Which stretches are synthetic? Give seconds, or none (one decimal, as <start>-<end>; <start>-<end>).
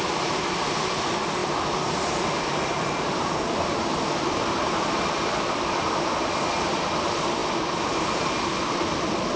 none